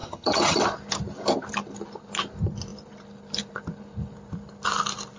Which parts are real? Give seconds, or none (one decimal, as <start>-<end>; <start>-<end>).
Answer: 0.6-5.2